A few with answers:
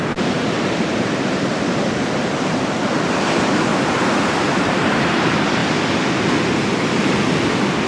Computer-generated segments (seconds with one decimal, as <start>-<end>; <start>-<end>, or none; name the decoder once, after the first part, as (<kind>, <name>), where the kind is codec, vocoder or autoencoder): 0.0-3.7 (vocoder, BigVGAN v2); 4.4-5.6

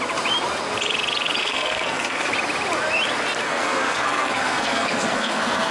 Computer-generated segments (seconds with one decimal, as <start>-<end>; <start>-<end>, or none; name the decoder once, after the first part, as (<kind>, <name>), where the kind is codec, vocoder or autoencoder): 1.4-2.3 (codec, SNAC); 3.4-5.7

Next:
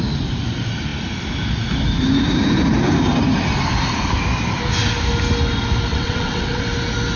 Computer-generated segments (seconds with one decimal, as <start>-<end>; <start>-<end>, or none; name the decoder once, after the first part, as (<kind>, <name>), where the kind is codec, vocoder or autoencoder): 5.9-6.6 (vocoder, WaveNeXt)

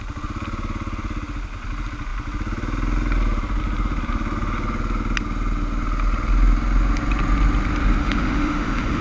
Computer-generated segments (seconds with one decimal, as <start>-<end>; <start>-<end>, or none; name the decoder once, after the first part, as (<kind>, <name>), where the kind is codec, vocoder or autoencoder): 8.0-9.0 (autoencoder, DAC-VAE)

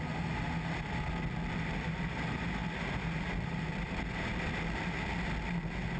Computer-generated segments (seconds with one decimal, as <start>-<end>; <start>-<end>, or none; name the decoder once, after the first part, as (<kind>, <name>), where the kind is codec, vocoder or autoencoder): none

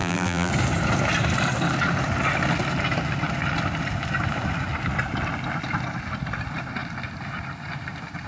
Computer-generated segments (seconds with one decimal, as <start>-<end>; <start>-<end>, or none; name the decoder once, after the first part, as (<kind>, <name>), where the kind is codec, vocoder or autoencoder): 0.0-0.5 (vocoder, BigVGAN v2)

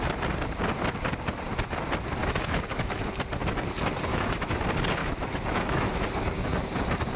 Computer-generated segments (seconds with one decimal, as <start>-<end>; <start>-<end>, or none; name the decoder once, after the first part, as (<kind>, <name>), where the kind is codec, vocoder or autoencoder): 2.2-3.1 (autoencoder, DAC-VAE); 4.1-4.6; 5.0-5.9